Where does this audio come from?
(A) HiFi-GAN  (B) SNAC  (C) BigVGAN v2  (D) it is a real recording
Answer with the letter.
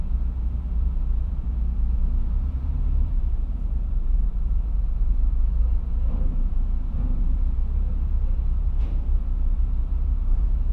C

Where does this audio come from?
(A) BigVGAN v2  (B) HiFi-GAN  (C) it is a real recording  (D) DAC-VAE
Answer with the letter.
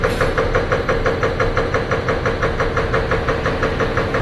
C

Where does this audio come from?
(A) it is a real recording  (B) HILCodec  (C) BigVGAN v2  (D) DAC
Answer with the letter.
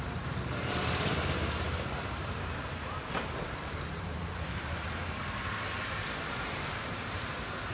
C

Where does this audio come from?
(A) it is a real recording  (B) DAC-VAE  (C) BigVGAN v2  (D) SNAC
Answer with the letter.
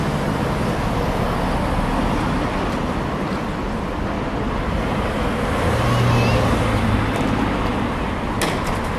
A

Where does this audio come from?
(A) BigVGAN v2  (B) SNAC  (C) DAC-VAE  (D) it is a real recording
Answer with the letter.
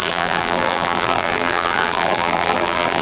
A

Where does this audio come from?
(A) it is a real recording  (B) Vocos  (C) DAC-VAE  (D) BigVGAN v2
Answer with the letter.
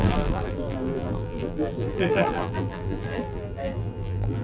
D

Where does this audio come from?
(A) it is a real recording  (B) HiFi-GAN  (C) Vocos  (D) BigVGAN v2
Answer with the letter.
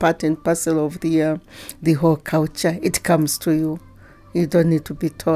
A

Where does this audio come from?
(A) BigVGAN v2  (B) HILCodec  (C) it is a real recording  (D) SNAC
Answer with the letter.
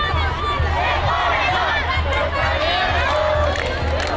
C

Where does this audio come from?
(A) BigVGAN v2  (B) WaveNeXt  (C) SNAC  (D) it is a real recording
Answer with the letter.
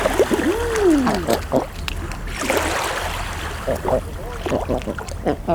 D